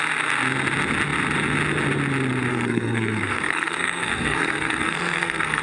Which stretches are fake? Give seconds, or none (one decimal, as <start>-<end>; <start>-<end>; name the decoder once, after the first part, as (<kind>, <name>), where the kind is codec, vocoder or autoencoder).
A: 2.5-5.6 (codec, SNAC)